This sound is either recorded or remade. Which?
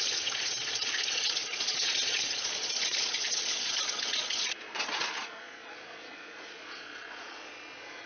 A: remade